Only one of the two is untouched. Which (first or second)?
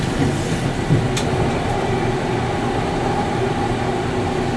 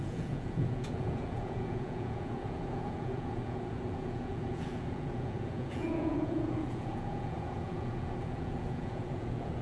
first